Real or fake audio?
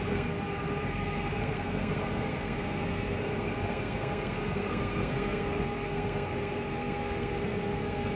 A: fake